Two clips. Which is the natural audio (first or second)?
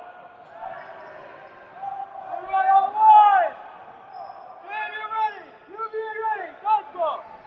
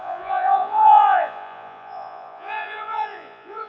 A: first